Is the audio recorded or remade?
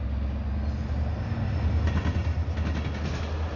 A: recorded